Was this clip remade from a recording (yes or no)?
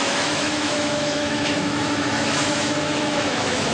yes